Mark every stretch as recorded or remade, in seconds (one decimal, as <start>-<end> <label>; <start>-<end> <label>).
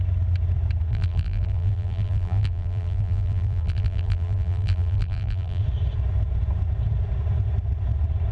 0.0-0.9 recorded; 0.9-5.6 remade; 5.6-8.3 recorded